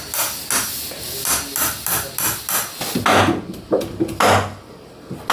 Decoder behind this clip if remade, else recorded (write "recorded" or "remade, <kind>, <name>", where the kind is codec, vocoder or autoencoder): recorded